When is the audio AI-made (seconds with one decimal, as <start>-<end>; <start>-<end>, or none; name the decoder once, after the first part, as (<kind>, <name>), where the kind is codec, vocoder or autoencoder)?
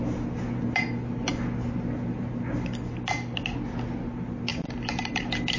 4.5-5.1 (vocoder, BigVGAN v2)